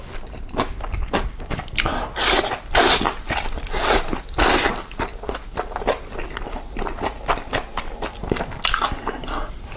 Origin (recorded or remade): recorded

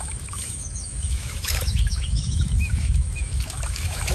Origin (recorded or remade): remade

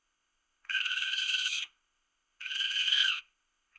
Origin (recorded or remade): remade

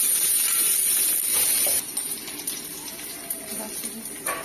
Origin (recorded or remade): remade